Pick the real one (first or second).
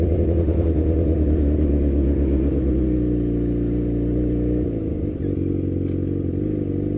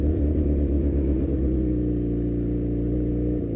first